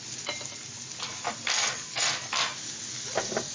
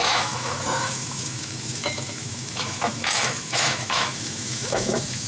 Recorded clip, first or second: first